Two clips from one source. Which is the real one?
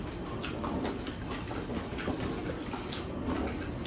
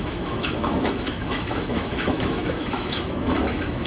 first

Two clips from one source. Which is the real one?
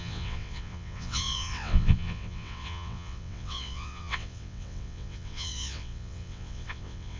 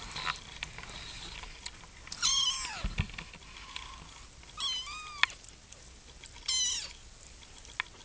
second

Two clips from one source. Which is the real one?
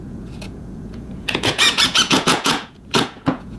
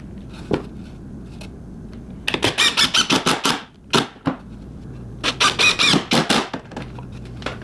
second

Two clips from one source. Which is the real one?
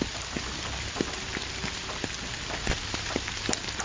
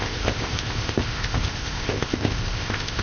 first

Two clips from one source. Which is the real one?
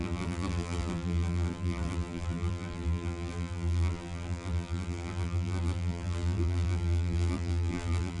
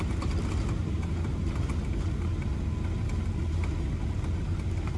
second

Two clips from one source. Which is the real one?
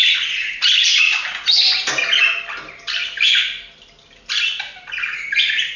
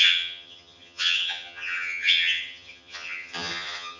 first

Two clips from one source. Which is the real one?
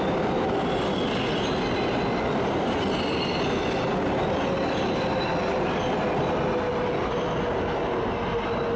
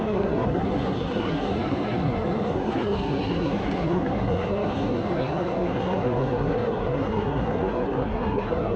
first